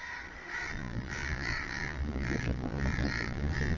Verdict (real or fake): fake